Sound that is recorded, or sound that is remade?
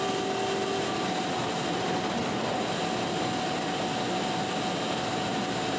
recorded